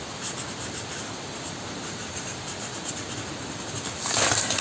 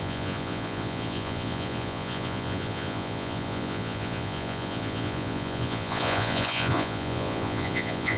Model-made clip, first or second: second